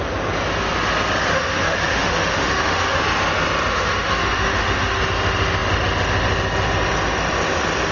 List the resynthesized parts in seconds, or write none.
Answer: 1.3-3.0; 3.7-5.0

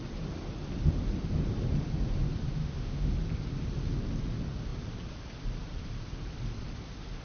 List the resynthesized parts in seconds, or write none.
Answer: 2.6-3.1

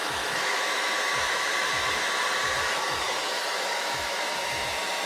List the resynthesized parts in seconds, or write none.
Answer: 0.0-5.1

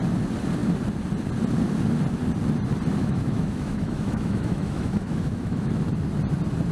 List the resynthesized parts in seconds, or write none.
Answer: 3.0-5.7